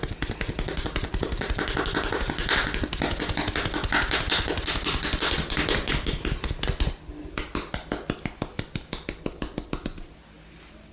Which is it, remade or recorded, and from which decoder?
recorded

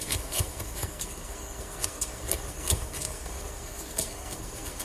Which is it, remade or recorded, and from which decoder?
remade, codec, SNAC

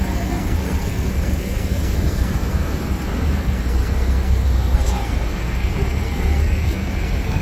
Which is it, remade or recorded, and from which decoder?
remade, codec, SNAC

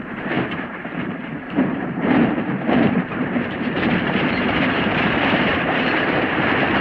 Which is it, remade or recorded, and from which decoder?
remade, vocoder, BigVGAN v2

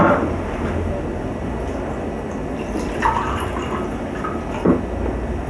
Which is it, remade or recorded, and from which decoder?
recorded